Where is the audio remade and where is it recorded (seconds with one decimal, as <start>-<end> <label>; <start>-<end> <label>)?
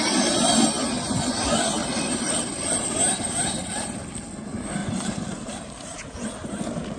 0.0-4.8 recorded; 4.8-5.6 remade; 5.6-7.0 recorded